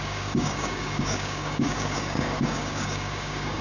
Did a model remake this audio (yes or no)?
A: yes